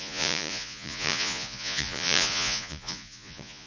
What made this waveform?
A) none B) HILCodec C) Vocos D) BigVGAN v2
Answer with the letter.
C